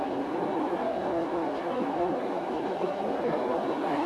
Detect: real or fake fake